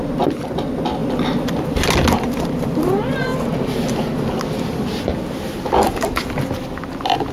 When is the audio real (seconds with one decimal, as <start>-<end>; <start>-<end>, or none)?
0.0-7.3